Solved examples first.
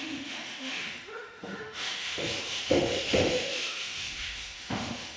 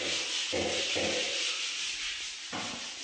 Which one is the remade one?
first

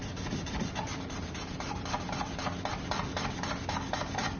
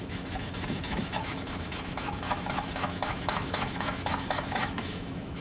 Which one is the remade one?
second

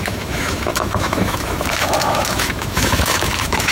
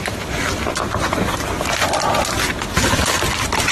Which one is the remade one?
first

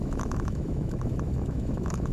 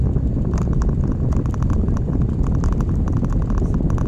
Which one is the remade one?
first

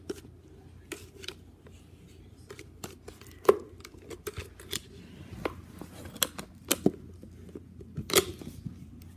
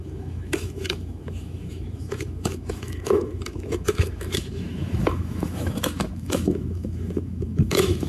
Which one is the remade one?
second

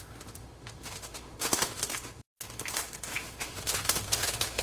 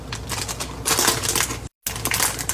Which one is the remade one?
first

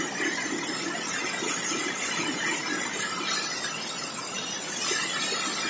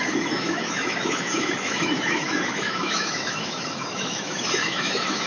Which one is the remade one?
second